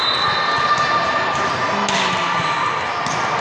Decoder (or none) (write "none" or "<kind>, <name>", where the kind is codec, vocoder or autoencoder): none